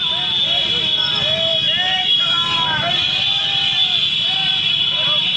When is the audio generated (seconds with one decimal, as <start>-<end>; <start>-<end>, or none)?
none